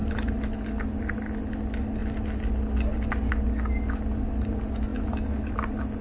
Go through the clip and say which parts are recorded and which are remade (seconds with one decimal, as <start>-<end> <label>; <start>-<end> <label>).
0.0-6.0 recorded